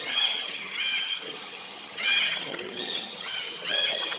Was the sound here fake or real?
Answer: fake